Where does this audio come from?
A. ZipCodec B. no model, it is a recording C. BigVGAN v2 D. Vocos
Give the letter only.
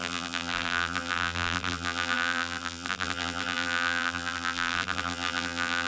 C